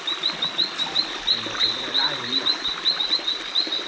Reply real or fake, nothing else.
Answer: real